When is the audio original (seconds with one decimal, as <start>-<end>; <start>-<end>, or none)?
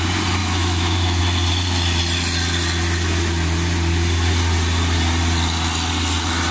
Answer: 0.0-0.4; 1.2-6.5